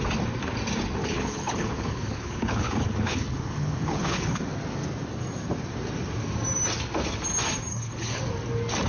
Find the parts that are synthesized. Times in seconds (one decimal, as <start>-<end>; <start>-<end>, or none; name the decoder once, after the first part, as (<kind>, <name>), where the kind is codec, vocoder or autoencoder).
1.0-4.4 (codec, HILCodec); 7.7-8.2